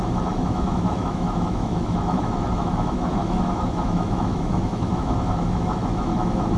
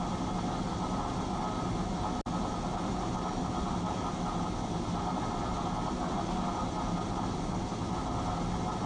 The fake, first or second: first